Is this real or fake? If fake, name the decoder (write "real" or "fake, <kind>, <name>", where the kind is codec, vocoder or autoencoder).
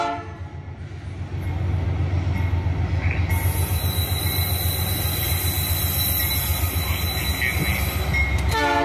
real